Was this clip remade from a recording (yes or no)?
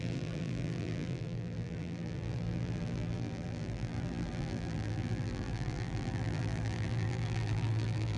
yes